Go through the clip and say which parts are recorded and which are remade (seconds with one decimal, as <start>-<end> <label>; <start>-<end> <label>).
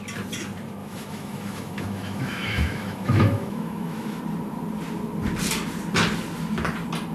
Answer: 0.0-0.8 recorded; 0.8-4.2 remade; 4.2-7.1 recorded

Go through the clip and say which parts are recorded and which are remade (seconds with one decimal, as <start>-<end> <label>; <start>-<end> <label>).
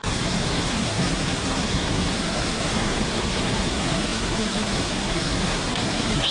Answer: 0.0-6.3 remade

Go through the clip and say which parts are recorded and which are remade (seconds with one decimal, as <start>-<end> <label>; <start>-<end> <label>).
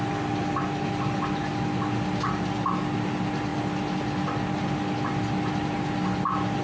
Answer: 0.0-6.6 recorded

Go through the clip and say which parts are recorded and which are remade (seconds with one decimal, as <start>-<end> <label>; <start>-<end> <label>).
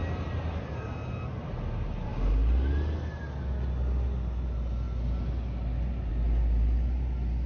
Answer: 0.0-7.5 recorded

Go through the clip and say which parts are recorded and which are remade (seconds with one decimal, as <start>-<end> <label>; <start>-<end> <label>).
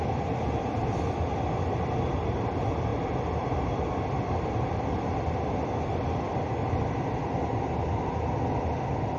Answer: 0.0-2.9 recorded; 2.9-3.6 remade; 3.6-9.2 recorded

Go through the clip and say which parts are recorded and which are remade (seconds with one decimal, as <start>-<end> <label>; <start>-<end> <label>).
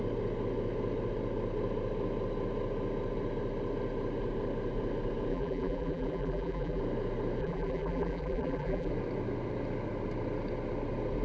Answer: 0.0-5.3 recorded; 5.3-6.8 remade; 6.8-7.4 recorded; 7.4-8.9 remade; 8.9-11.2 recorded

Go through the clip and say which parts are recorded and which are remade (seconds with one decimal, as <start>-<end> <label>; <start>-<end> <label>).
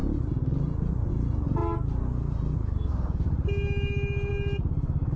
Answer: 0.0-5.2 recorded